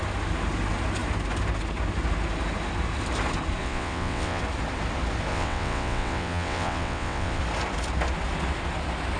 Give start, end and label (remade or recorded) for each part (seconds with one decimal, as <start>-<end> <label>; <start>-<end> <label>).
0.0-3.6 recorded; 3.6-4.4 remade; 4.4-5.3 recorded; 5.3-7.4 remade; 7.4-9.2 recorded